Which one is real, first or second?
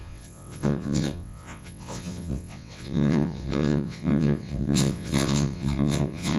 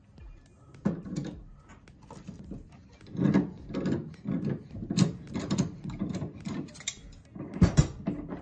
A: second